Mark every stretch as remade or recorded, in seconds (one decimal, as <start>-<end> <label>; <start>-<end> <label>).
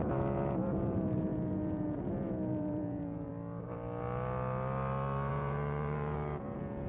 0.0-3.3 remade; 3.3-5.3 recorded; 5.3-6.9 remade